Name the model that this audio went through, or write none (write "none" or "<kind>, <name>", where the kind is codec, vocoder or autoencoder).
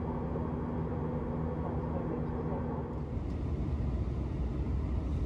none